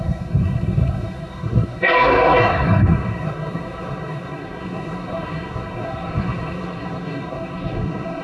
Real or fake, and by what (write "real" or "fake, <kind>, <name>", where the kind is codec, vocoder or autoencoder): fake, codec, SNAC